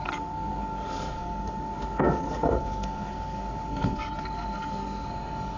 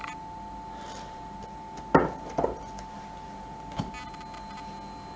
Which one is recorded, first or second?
second